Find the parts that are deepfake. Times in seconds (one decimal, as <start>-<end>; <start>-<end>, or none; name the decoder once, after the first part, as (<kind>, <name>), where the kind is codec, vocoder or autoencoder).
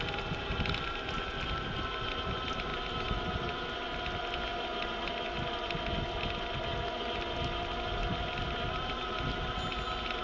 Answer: none